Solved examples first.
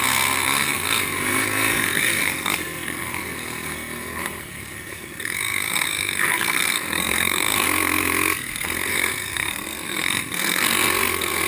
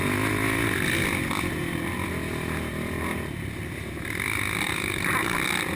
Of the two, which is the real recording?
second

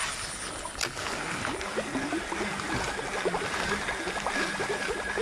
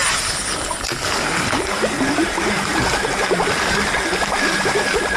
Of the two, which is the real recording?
first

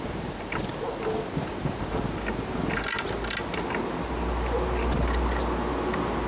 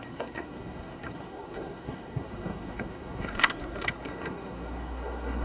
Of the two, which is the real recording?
first